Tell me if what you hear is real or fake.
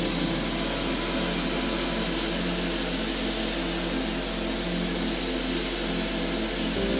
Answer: real